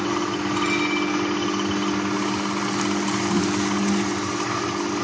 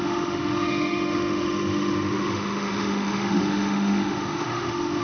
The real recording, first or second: first